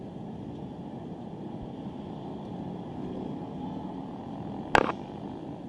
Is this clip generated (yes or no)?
no